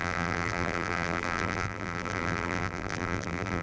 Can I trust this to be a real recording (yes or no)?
no